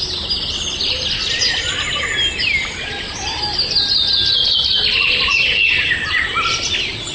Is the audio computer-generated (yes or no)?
no